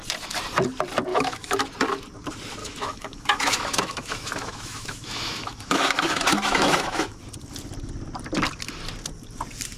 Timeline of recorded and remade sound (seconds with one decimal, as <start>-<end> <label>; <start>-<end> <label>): 0.0-1.1 recorded; 1.1-1.6 remade; 1.6-2.6 recorded; 2.6-7.2 remade; 7.2-9.8 recorded